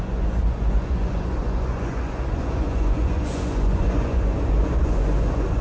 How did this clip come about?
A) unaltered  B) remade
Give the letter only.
B